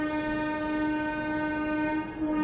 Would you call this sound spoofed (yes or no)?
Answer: no